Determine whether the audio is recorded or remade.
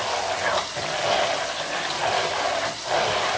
recorded